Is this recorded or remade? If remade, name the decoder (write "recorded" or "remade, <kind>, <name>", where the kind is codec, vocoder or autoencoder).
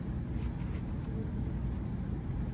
recorded